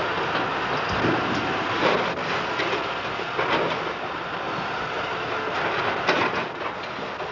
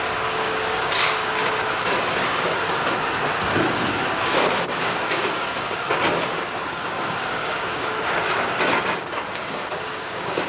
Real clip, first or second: first